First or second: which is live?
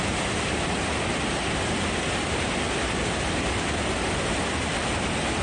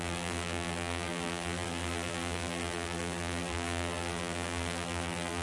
first